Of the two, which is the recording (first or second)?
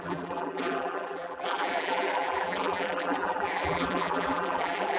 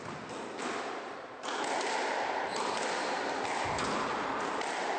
second